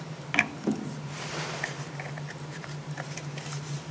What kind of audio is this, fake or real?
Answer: real